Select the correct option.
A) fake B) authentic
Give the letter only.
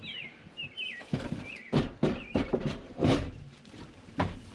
A